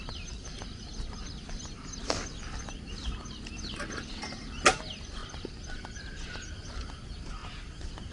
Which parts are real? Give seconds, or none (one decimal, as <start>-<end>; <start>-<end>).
0.0-8.1